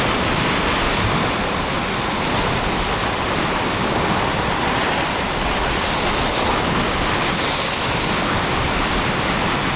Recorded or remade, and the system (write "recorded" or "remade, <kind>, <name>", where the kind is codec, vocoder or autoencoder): recorded